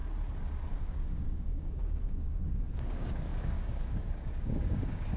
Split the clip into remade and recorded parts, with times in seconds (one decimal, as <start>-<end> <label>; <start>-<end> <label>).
0.0-0.8 recorded; 0.8-5.2 remade